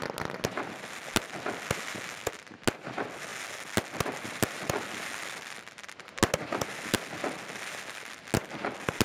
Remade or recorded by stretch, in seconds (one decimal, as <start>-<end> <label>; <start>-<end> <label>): 0.0-9.0 recorded

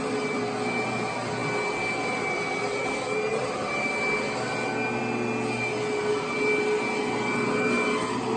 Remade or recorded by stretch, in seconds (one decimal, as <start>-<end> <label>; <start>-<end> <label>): 0.0-3.3 recorded; 3.3-3.9 remade; 3.9-8.4 recorded

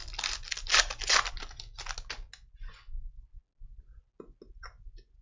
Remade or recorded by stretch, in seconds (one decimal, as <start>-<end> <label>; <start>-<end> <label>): 0.0-5.2 recorded

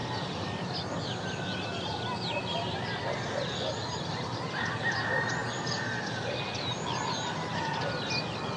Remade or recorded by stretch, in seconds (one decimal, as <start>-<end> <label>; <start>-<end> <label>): 0.0-8.6 recorded

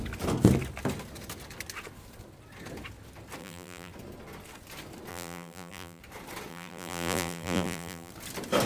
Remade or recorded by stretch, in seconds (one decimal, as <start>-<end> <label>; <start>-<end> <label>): 0.0-3.4 recorded; 3.4-3.9 remade; 3.9-5.1 recorded; 5.1-6.0 remade; 6.0-6.5 recorded; 6.5-8.1 remade; 8.1-8.7 recorded

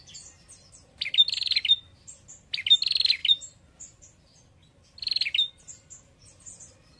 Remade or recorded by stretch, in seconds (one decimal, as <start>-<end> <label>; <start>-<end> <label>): 0.0-7.0 recorded